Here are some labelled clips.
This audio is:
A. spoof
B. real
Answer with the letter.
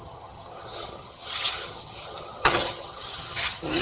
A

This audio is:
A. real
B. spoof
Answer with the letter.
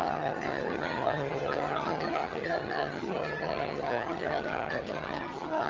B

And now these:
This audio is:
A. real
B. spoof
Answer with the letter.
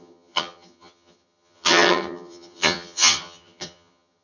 B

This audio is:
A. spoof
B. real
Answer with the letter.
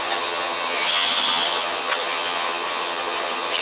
A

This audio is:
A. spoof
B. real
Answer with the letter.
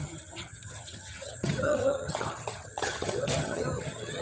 A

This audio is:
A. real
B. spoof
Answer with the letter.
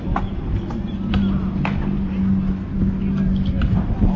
A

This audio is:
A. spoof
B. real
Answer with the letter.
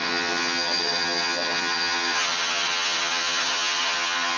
A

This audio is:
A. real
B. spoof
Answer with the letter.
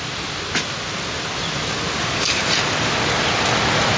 A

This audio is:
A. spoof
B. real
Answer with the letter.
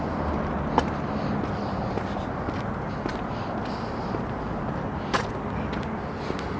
B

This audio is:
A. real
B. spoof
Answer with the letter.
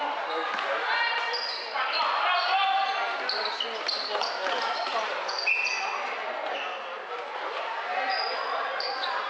A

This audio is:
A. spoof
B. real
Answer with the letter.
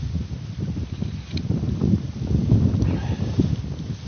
B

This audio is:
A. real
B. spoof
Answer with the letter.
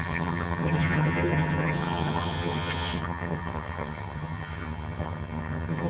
B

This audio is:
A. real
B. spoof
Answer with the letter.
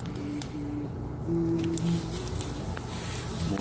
A